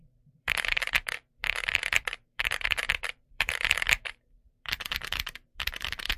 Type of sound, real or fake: fake